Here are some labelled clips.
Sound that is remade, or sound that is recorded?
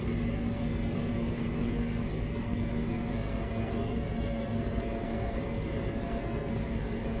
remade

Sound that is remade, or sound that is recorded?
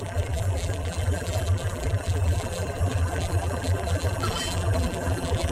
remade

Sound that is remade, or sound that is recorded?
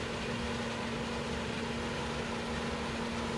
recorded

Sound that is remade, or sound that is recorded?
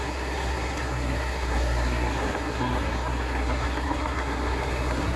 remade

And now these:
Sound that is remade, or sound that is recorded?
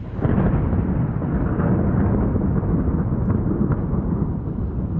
recorded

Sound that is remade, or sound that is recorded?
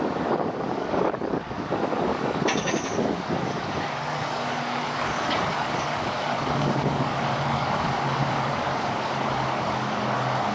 remade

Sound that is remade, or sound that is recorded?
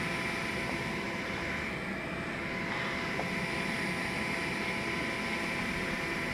recorded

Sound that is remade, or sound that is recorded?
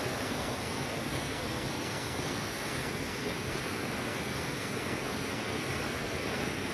remade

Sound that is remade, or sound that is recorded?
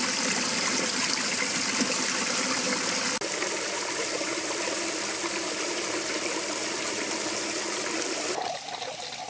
recorded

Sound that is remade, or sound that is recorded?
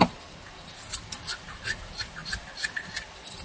recorded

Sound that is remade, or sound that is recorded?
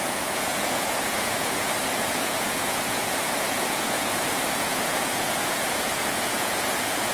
remade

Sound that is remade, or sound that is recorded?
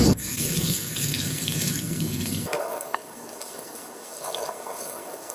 remade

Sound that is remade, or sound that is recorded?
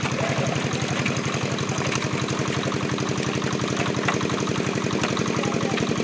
recorded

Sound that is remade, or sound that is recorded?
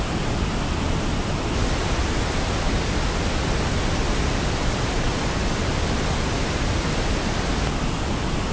recorded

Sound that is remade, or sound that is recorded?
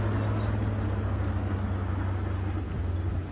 recorded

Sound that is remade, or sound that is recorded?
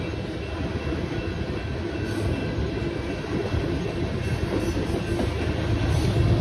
recorded